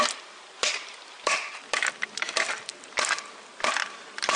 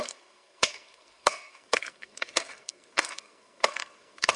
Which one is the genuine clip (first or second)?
first